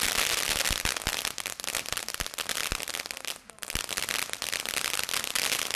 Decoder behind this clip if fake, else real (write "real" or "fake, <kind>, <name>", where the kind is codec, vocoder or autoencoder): real